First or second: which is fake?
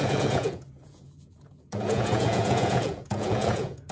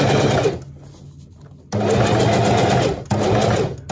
first